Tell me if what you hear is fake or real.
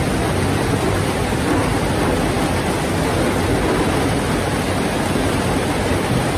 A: real